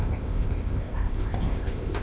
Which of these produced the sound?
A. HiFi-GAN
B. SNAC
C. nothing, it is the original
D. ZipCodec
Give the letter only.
D